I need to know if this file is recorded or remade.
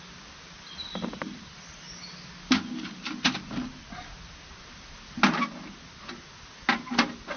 recorded